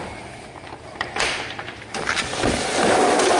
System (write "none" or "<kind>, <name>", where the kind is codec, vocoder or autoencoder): vocoder, BigVGAN v2